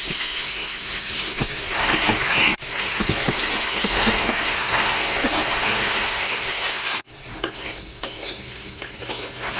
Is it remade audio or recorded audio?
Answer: remade